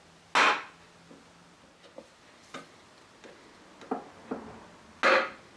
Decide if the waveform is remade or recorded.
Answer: recorded